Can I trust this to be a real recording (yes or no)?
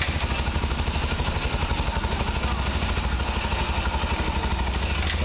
yes